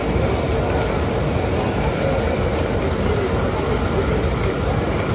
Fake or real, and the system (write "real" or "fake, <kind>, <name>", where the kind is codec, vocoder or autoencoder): real